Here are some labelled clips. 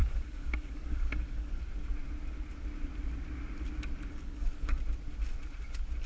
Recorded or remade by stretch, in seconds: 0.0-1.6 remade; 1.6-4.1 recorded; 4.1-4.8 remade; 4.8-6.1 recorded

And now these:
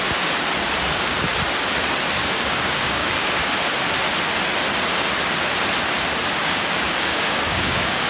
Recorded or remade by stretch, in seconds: 0.0-2.2 recorded; 2.2-3.5 remade; 3.5-6.4 recorded; 6.4-8.1 remade

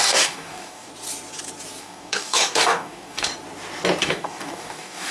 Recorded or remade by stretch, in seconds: 0.0-0.9 remade; 0.9-1.8 recorded; 1.8-3.3 remade; 3.3-4.0 recorded; 4.0-5.1 remade

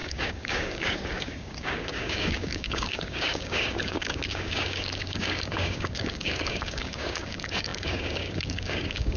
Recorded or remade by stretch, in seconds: 0.0-9.2 remade